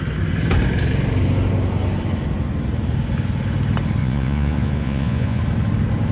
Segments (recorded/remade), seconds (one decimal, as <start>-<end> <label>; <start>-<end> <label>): 0.0-4.0 recorded; 4.0-5.4 remade; 5.4-6.1 recorded

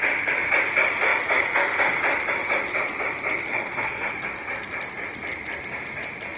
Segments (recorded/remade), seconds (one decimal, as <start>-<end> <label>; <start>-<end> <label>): 0.0-3.5 recorded; 3.5-4.1 remade; 4.1-6.4 recorded

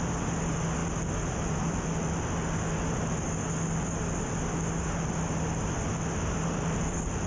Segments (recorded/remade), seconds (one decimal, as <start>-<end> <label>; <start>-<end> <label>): 0.0-7.3 recorded

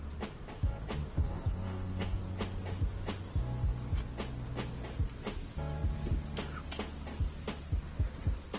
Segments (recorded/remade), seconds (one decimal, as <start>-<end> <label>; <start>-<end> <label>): 0.0-1.2 recorded; 1.2-2.2 remade; 2.2-8.6 recorded

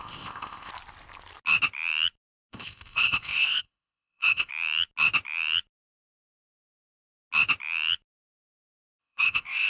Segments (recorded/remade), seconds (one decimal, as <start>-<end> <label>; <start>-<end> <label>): 0.0-0.7 remade; 0.7-2.5 recorded; 2.5-4.5 remade; 4.5-9.0 recorded; 9.0-9.7 remade

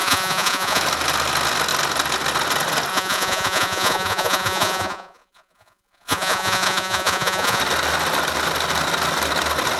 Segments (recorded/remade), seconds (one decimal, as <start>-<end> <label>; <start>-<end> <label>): 0.0-0.8 remade; 0.8-2.9 recorded; 2.9-7.6 remade; 7.6-9.8 recorded

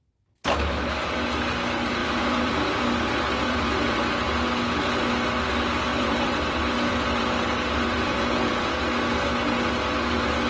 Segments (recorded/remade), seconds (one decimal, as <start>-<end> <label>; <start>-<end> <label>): 0.0-2.0 recorded; 2.0-4.0 remade; 4.0-5.9 recorded; 5.9-8.7 remade; 8.7-10.5 recorded

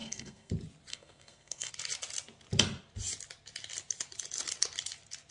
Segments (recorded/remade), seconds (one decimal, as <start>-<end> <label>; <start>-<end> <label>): 0.0-0.5 remade; 0.5-0.9 recorded; 0.9-1.7 remade; 1.7-5.3 recorded